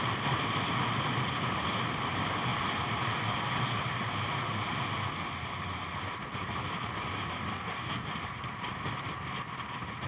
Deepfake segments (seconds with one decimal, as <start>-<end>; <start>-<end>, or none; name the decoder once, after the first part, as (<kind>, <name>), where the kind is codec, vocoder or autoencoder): 7.5-8.1 (codec, DAC)